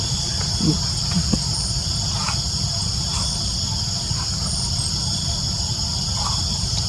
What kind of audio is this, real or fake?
real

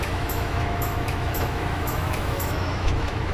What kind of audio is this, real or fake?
fake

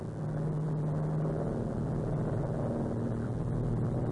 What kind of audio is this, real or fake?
real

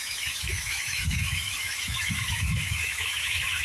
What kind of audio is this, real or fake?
fake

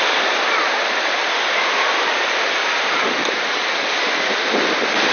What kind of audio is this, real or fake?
real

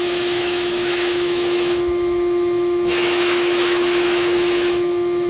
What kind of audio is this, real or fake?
fake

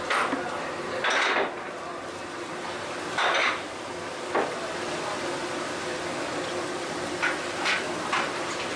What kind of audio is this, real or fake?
real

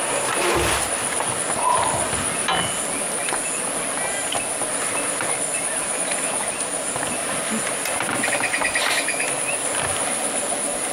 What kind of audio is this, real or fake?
real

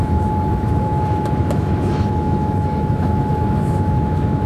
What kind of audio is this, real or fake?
fake